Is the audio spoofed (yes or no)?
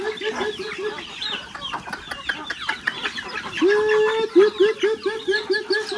no